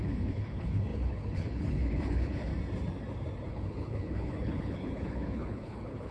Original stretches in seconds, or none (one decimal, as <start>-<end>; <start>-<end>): 2.5-3.5